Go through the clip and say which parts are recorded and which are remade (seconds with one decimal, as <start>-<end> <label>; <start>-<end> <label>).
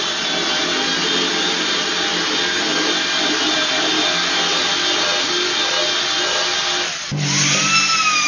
0.0-1.0 recorded; 1.0-1.9 remade; 1.9-2.7 recorded; 2.7-3.9 remade; 3.9-8.3 recorded